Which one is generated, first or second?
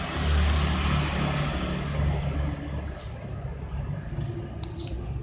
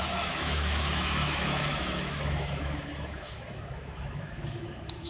second